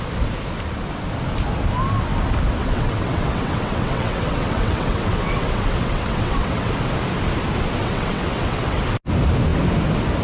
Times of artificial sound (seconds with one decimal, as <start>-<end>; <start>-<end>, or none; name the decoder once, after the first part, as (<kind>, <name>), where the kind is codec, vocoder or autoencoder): 2.6-6.7 (vocoder, WaveNeXt); 7.8-8.8